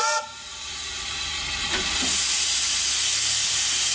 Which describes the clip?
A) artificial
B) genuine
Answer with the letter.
B